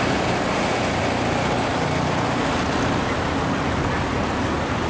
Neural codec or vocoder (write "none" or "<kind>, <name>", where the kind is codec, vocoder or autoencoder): none